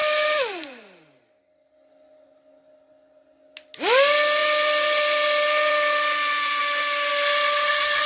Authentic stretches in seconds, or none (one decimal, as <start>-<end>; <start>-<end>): 0.0-8.1